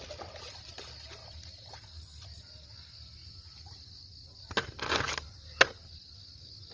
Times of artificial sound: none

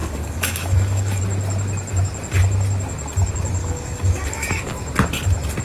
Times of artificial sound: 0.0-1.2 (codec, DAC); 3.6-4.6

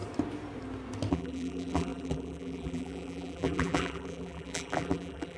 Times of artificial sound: 1.1-5.4 (vocoder, BigVGAN v2)

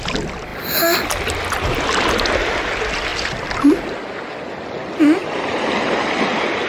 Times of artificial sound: 3.1-3.8 (vocoder, BigVGAN v2); 5.2-5.9

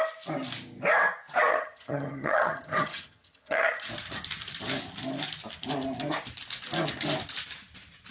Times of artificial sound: 1.5-3.9 (vocoder, HiFi-GAN)

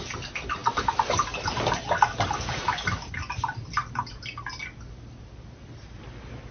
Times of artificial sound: none